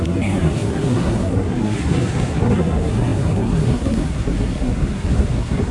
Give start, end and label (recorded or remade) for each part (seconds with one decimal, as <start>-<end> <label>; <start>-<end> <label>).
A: 0.0-5.7 remade